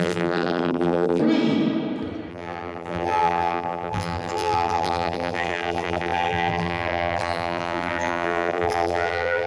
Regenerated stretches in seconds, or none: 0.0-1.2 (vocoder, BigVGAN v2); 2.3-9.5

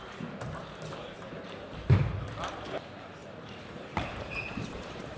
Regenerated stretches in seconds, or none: 0.6-2.0 (vocoder, BigVGAN v2); 3.2-5.2

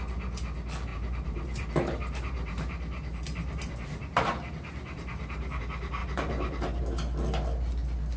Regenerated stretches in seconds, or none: 0.9-5.6 (vocoder, BigVGAN v2); 6.0-6.8

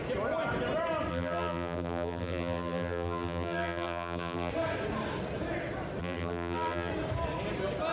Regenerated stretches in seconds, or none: 1.1-4.5 (vocoder, BigVGAN v2); 6.0-6.9

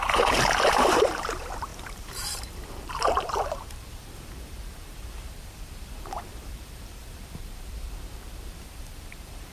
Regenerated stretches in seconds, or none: 0.0-9.5 (vocoder, BigVGAN v2)

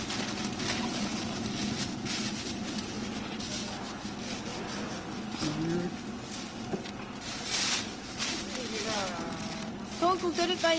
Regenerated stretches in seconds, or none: none